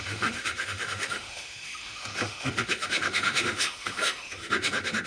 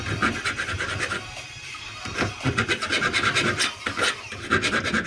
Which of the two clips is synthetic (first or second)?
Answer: first